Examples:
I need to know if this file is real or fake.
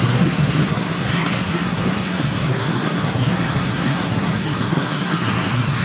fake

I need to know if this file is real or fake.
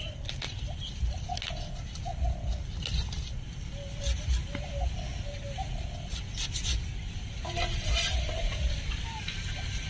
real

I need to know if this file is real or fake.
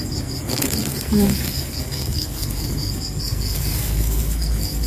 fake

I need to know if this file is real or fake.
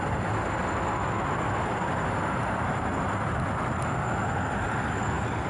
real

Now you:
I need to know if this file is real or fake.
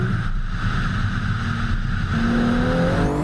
real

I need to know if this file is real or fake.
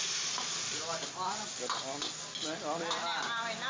real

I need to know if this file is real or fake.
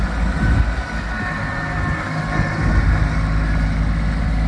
real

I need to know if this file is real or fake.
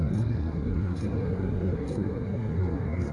fake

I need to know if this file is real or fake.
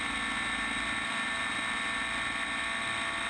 real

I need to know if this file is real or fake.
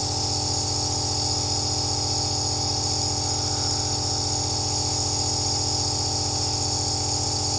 real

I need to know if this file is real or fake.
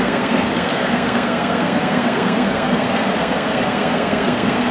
fake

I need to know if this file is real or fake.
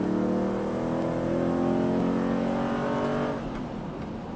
real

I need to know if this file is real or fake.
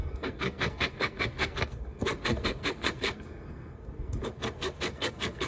fake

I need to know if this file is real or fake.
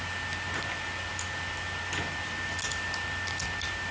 real